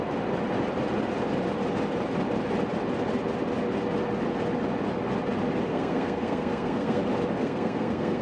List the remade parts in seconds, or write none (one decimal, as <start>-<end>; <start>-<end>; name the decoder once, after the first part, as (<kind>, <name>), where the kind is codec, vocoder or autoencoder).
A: 5.7-7.0 (codec, SNAC); 7.4-8.2